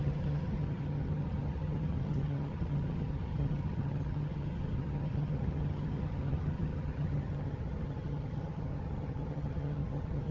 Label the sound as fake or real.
fake